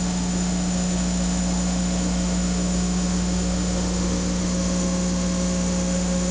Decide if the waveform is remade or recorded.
remade